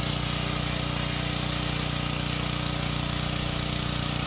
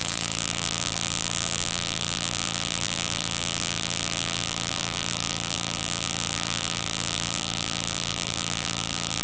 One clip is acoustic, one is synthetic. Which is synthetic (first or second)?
second